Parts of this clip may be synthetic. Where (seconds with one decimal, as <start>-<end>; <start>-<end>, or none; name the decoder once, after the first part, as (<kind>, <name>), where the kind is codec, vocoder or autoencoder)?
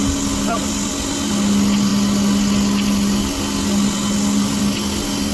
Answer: none